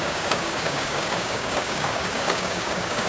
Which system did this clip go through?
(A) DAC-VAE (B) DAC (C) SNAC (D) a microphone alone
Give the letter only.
B